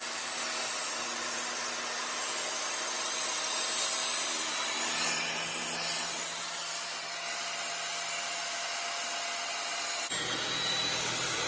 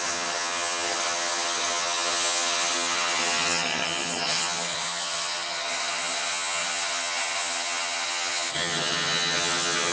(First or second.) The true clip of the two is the first